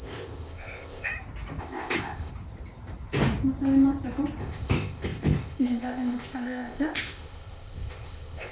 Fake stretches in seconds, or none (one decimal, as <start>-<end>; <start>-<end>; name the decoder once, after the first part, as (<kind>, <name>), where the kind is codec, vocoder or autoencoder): 0.0-1.1 (codec, ZipCodec); 1.6-2.3; 4.4-8.5